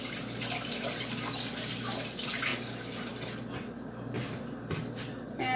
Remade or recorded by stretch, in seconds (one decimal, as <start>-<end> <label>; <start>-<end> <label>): 0.0-5.6 recorded